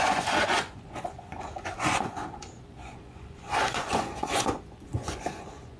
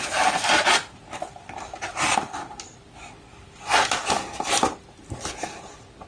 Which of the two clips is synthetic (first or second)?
first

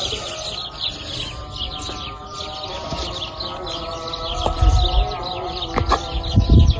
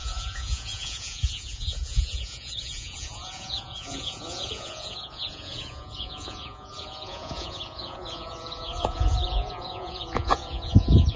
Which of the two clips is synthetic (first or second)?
second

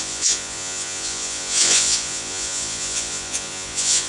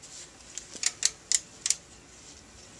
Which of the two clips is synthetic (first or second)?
first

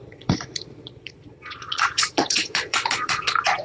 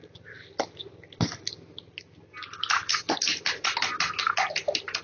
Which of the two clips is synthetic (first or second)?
first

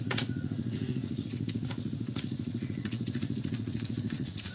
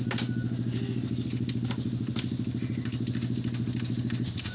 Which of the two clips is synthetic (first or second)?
first